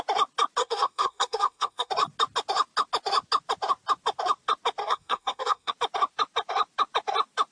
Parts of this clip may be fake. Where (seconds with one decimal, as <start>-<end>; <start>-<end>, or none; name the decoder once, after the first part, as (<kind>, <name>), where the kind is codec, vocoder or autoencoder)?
0.6-1.9 (codec, SNAC); 4.8-5.7